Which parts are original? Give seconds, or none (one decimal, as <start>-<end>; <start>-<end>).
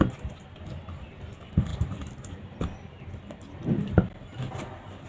0.0-1.7; 4.5-5.1